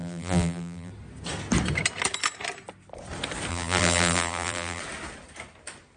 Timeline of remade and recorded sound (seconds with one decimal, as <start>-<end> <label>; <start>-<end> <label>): 0.0-0.9 remade; 0.9-3.5 recorded; 3.5-4.8 remade; 4.8-6.0 recorded